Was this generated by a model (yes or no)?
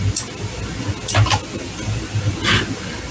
no